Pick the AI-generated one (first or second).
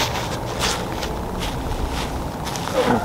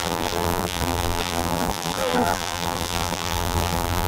second